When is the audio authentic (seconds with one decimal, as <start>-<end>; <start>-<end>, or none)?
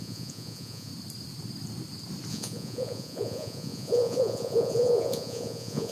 0.9-2.3